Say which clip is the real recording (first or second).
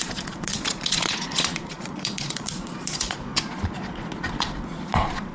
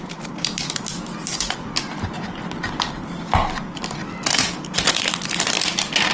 second